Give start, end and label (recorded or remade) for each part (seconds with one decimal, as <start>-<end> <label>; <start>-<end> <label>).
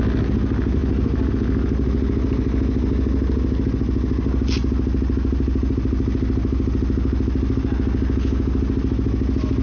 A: 0.0-0.8 recorded; 0.8-1.3 remade; 1.3-9.6 recorded